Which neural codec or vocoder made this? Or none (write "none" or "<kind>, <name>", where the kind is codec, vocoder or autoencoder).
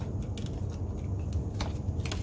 none